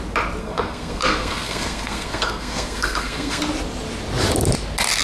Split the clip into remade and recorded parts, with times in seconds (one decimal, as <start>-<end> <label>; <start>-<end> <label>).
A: 0.0-0.4 recorded; 0.4-3.4 remade; 3.4-5.0 recorded